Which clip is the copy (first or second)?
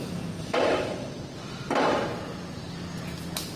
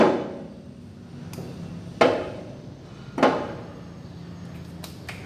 first